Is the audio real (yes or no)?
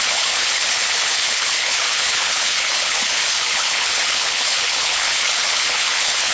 no